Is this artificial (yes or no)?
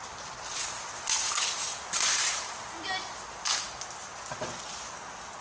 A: no